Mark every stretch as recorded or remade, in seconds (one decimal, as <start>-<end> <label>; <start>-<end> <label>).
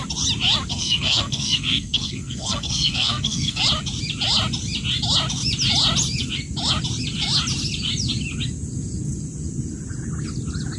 0.0-0.7 recorded; 0.7-3.6 remade; 3.6-10.8 recorded